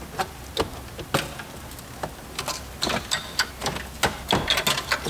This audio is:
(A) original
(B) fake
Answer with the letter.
A